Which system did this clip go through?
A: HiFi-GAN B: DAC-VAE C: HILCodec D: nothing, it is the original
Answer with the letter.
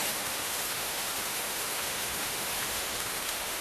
B